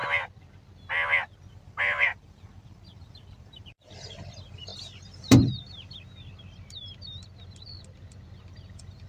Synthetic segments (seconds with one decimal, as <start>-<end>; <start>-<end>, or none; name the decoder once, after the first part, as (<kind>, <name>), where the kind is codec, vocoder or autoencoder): 1.5-4.7 (vocoder, BigVGAN v2); 8.7-9.1